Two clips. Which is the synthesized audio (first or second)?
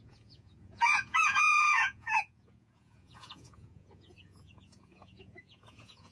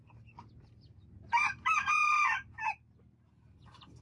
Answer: first